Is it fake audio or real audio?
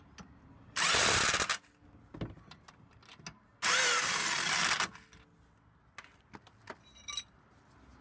real